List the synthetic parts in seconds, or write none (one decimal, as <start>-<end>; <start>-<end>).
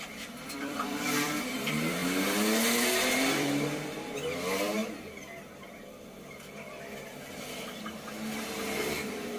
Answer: 0.0-2.0; 3.3-4.8; 8.8-9.4